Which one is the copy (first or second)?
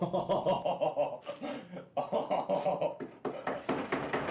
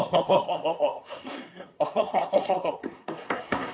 second